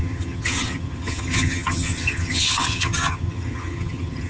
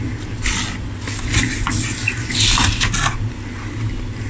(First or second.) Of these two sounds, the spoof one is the first